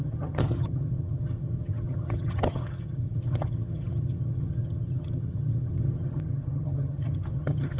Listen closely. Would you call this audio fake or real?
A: fake